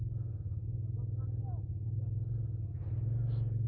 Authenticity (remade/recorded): recorded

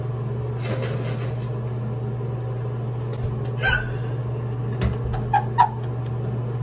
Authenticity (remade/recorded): recorded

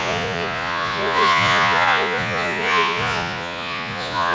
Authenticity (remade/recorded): remade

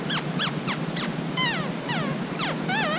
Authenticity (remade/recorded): recorded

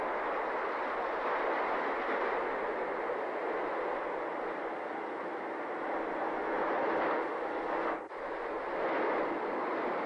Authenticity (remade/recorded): recorded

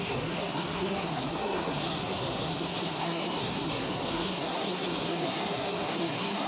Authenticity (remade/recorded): remade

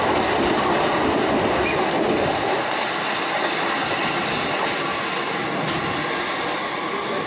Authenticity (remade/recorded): recorded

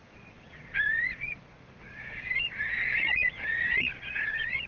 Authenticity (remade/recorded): remade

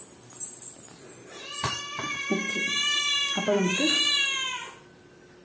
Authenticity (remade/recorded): recorded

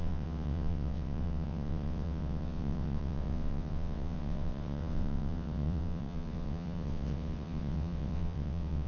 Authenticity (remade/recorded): remade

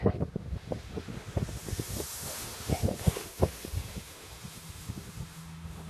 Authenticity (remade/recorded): remade